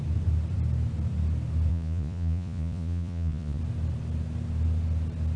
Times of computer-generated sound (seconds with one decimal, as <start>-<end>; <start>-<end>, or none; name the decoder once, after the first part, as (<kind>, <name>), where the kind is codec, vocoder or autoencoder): 1.7-3.6 (vocoder, Vocos)